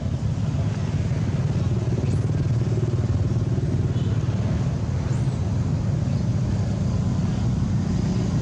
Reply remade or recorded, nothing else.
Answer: recorded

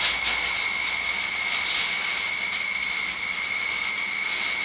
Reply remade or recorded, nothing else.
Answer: recorded